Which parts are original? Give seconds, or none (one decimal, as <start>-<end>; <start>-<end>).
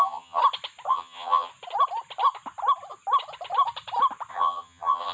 0.4-0.9; 1.5-4.3